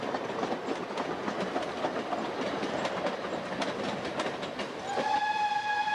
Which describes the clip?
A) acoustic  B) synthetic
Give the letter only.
A